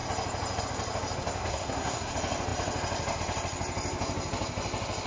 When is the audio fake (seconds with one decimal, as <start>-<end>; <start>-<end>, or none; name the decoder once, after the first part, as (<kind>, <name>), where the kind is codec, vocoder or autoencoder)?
1.4-2.1 (codec, SNAC)